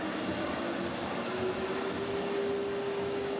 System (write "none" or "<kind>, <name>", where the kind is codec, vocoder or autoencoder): none